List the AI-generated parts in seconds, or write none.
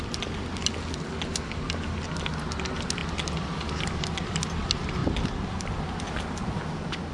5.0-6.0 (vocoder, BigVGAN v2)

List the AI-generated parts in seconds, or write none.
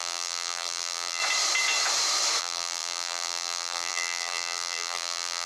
0.0-1.2 (vocoder, BigVGAN v2); 2.4-5.5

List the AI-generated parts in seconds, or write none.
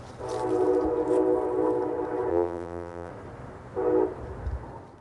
2.3-3.1 (vocoder, BigVGAN v2)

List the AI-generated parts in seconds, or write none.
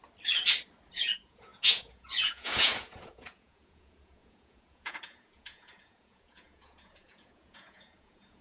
0.9-8.4 (vocoder, Vocos)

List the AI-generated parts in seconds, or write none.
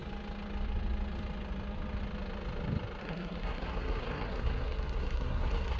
3.0-5.8 (codec, SNAC)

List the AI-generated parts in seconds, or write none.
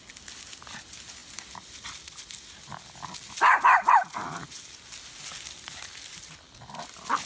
none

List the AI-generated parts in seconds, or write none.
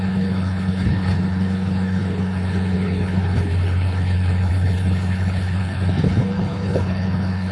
0.0-7.5 (codec, HILCodec)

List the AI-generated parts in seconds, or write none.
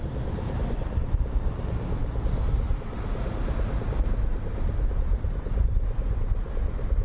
none